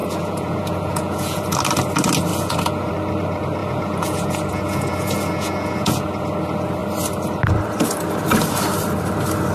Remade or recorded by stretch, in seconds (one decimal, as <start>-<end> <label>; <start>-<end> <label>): 0.0-1.4 remade; 1.4-2.3 recorded; 2.3-2.9 remade; 2.9-3.6 recorded; 3.6-6.3 remade; 6.3-9.5 recorded